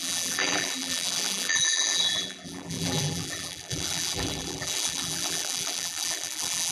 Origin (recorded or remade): remade